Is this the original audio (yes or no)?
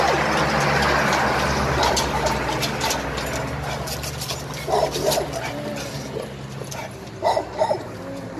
yes